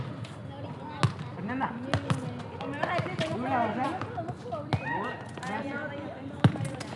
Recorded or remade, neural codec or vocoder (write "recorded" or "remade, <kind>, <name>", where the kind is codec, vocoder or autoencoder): recorded